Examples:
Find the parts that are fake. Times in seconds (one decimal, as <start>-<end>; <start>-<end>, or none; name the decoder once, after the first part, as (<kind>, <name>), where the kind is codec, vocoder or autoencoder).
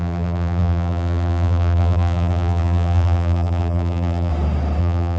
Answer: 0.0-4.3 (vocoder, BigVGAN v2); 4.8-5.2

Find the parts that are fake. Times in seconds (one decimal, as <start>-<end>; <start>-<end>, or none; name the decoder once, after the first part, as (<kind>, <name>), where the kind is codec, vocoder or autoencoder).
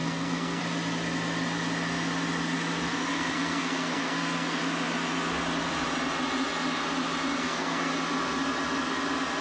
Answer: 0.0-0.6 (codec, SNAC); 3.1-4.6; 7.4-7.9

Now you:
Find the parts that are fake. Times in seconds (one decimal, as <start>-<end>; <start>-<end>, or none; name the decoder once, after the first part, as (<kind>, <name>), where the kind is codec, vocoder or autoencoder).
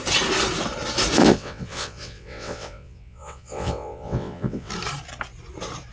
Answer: 1.2-4.7 (vocoder, WaveNeXt)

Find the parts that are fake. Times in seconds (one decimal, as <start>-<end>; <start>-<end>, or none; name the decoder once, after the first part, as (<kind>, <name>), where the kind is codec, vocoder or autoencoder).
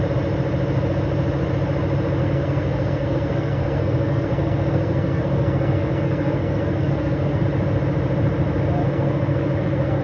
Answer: 2.2-7.4 (codec, SNAC); 8.8-10.0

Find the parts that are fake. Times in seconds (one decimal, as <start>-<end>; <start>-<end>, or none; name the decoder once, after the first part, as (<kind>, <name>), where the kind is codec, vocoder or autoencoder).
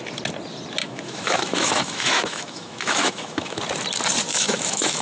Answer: 0.8-3.6 (autoencoder, DAC-VAE); 4.3-5.0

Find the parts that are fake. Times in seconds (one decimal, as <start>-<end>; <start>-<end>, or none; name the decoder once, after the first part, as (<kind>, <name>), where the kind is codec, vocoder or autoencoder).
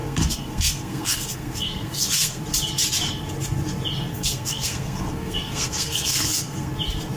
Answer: 0.0-2.4 (codec, SNAC); 4.1-6.7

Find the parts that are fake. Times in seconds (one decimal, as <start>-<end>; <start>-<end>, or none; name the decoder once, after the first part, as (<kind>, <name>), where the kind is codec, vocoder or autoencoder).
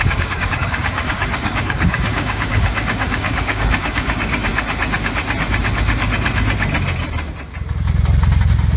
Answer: 0.0-4.5 (codec, DAC)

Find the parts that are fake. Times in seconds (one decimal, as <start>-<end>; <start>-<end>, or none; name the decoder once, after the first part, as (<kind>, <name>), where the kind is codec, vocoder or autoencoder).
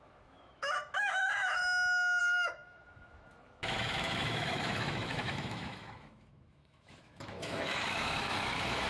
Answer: 0.0-1.6 (autoencoder, DAC-VAE); 2.2-8.9